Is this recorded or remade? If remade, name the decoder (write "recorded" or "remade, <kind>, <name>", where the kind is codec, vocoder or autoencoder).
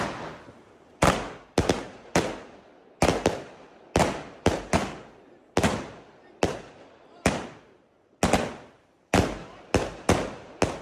recorded